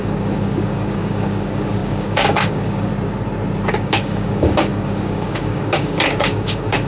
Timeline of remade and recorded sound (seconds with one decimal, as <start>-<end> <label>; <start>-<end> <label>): 0.0-2.9 remade; 2.9-3.7 recorded; 3.7-6.9 remade